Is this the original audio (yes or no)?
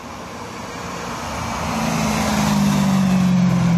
yes